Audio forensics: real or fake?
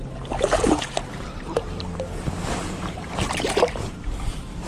fake